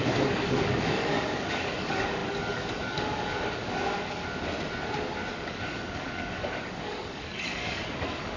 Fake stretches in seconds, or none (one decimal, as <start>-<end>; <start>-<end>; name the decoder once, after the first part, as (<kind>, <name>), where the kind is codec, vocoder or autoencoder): 0.0-4.2 (codec, DAC); 5.3-8.4